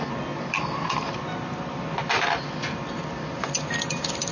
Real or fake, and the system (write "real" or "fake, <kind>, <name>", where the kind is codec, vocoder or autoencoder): real